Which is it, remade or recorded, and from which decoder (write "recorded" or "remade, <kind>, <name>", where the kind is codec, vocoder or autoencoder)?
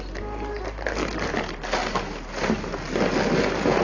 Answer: recorded